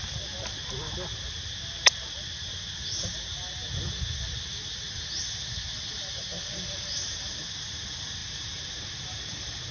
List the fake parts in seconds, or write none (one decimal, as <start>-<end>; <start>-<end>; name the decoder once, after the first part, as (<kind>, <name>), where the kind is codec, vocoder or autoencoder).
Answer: 6.3-7.3 (vocoder, BigVGAN v2); 8.2-9.7